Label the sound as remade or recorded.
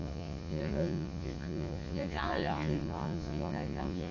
remade